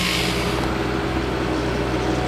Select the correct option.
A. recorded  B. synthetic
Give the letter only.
A